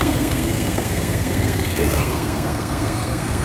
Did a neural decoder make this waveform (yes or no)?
yes